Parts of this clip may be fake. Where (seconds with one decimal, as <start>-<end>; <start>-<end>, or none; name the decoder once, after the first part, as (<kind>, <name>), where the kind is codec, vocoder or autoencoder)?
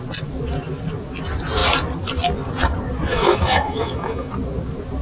3.1-4.3 (autoencoder, DAC-VAE)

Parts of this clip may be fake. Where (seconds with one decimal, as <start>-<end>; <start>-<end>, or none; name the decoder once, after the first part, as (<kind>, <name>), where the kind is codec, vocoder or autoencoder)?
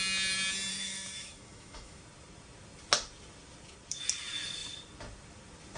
0.7-2.0 (autoencoder, DAC-VAE)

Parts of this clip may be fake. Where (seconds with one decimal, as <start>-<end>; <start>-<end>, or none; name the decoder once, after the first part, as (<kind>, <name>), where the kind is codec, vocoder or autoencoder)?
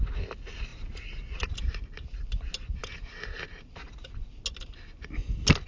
none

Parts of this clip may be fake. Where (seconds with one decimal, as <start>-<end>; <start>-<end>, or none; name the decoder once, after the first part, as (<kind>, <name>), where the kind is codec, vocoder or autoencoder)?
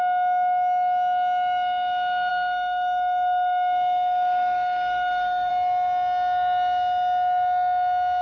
2.3-5.5 (autoencoder, DAC-VAE)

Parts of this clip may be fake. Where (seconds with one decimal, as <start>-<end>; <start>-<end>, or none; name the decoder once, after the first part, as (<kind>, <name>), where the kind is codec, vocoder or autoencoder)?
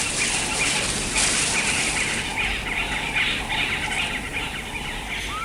none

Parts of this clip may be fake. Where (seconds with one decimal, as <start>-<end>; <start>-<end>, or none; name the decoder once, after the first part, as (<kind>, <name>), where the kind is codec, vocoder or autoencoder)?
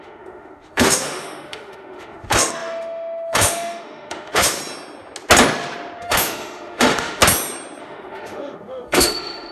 0.0-4.6 (autoencoder, DAC-VAE); 6.0-7.2; 7.8-9.5